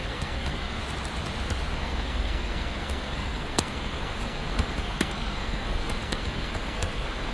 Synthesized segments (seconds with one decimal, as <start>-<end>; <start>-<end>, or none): 0.0-0.8; 1.7-7.3